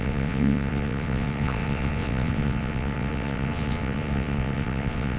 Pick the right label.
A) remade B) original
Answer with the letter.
A